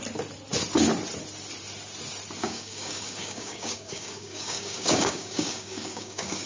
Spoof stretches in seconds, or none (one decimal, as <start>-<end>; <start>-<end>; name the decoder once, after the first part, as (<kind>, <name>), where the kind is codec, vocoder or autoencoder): 2.4-6.5 (codec, DAC)